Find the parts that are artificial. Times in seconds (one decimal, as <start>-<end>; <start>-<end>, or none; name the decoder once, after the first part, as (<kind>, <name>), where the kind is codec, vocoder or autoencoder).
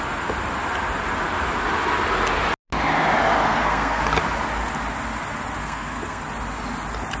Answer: 3.4-4.0 (codec, SNAC); 5.6-6.2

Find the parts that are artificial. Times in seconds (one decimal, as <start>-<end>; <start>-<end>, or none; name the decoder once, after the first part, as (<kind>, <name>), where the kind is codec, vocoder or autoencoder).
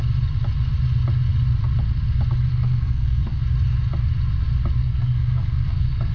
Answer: 2.5-3.4 (codec, SNAC); 4.8-6.1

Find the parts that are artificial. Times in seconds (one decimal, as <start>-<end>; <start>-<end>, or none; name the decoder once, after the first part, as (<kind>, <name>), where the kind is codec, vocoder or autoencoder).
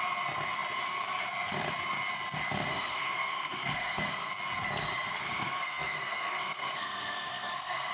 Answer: 2.7-4.3 (codec, SNAC); 5.2-7.9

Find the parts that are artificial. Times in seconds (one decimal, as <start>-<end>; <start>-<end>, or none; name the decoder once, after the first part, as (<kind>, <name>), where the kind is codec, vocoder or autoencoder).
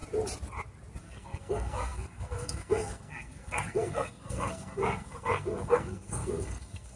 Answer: 1.0-7.0 (codec, SNAC)